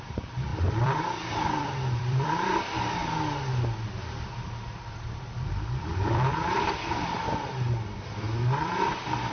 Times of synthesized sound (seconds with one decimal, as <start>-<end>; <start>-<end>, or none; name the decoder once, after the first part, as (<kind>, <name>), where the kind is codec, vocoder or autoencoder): 0.0-3.0 (vocoder, BigVGAN v2); 4.7-9.3